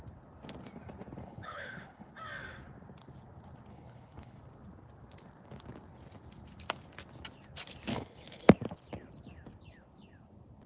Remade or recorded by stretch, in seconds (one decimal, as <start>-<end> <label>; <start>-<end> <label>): 0.0-1.2 recorded; 1.2-2.1 remade; 2.1-3.7 recorded; 3.7-4.4 remade; 4.4-7.9 recorded; 7.9-8.4 remade; 8.4-10.7 recorded